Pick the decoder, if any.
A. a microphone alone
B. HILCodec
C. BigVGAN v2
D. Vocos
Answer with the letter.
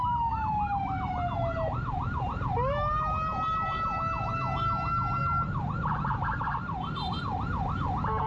A